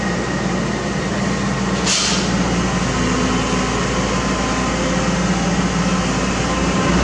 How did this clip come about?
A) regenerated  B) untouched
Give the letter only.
B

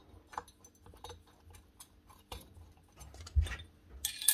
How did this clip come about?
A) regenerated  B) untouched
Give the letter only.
B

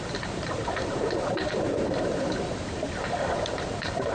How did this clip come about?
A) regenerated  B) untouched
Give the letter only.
A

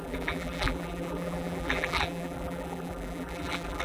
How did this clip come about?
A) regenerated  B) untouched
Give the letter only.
A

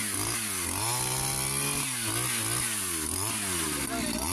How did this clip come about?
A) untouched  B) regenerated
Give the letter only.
A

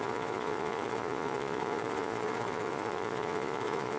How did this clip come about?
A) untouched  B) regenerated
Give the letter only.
B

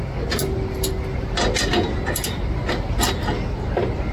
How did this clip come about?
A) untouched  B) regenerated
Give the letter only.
A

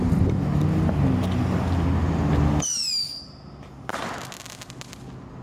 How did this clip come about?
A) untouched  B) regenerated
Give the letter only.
A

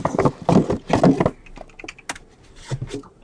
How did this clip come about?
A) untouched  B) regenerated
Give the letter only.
A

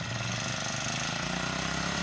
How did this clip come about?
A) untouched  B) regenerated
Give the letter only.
A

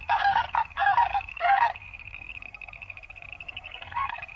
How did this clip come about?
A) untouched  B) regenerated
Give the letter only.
B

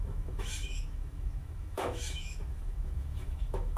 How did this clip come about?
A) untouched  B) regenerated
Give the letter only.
B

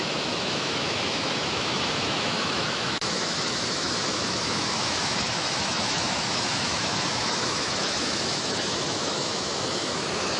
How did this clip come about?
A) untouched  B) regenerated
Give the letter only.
B